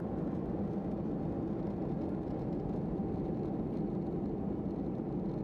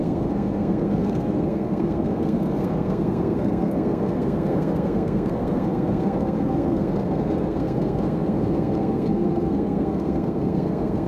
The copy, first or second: second